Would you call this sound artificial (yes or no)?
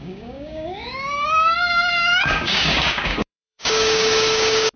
yes